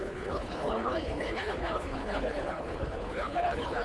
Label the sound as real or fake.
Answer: fake